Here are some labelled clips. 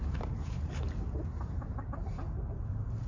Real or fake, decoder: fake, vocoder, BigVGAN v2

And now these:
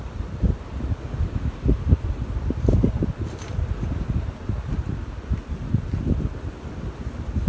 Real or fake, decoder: real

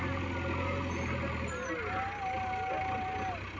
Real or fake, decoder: real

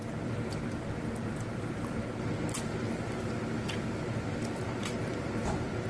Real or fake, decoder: real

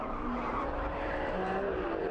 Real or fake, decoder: fake, vocoder, BigVGAN v2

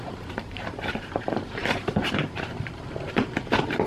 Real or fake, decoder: fake, vocoder, BigVGAN v2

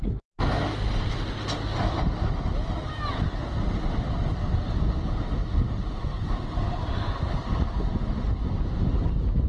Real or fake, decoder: real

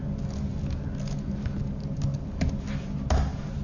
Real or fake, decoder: real